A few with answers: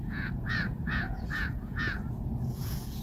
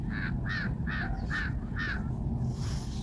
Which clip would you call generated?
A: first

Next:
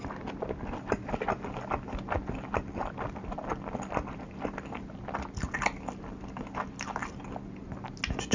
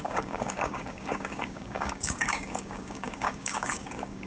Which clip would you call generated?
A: second